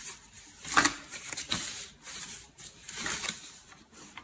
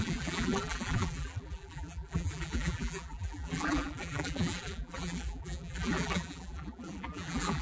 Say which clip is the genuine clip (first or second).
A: first